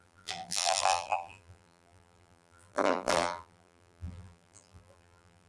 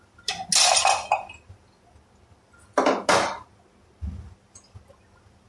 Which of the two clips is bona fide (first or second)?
second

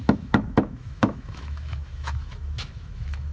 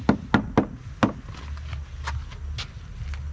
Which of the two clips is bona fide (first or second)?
second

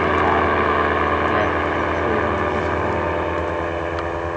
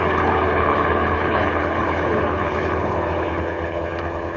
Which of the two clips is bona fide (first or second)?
first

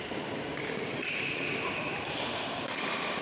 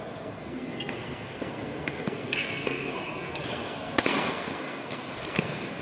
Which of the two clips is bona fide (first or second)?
first